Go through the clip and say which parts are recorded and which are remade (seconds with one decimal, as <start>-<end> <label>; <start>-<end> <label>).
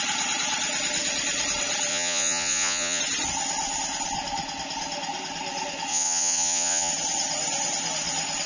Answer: 0.0-1.9 recorded; 1.9-3.0 remade; 3.0-5.9 recorded; 5.9-6.9 remade; 6.9-8.5 recorded